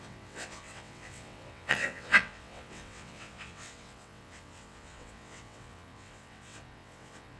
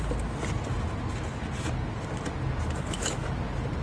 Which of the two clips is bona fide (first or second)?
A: second